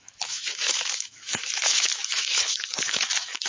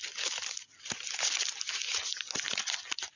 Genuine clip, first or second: second